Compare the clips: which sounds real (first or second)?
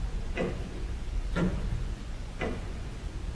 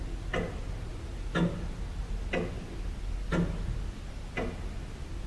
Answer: second